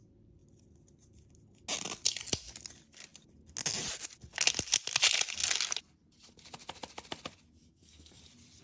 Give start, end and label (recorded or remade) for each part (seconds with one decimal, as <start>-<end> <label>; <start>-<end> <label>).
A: 0.0-7.7 recorded; 7.7-8.2 remade; 8.2-8.6 recorded